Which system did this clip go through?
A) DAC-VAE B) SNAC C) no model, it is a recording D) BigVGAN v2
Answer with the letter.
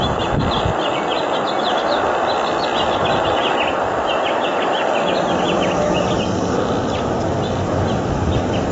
C